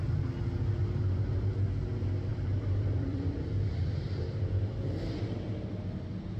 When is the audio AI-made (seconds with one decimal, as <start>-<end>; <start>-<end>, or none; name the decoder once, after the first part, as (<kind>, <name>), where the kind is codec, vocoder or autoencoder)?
2.3-3.5 (vocoder, BigVGAN v2)